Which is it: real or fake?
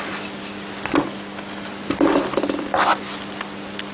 real